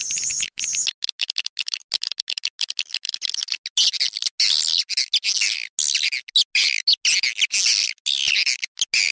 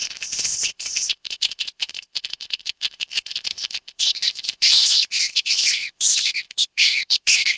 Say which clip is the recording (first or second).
first